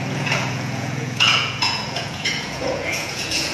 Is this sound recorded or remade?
remade